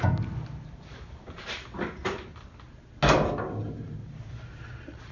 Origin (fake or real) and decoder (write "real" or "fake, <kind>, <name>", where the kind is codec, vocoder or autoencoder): real